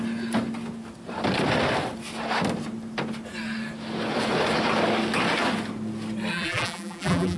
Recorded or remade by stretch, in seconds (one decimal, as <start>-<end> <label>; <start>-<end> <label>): 0.0-6.3 recorded; 6.3-7.4 remade